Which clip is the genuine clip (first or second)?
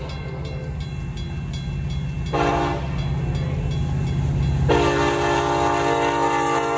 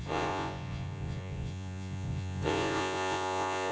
first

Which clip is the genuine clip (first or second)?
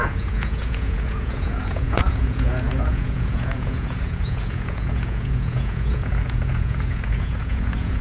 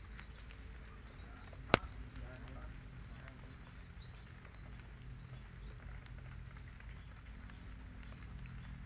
second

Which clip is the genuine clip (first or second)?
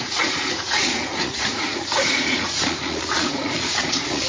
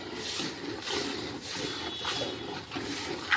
second